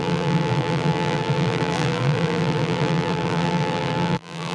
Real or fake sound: fake